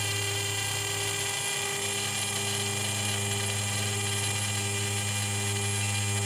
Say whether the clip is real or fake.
real